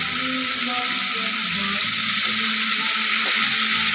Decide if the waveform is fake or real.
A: real